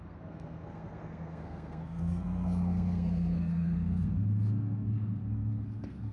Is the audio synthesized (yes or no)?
yes